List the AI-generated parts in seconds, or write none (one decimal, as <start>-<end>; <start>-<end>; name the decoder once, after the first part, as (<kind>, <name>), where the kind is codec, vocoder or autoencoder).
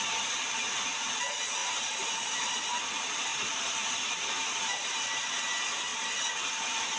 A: 1.6-2.5 (vocoder, BigVGAN v2); 3.3-5.3